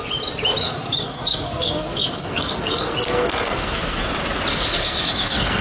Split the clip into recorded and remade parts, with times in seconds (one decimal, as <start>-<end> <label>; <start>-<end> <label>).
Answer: 0.0-0.6 recorded; 0.6-4.0 remade; 4.0-4.5 recorded; 4.5-5.6 remade